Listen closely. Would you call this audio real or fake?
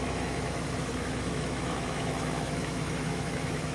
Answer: fake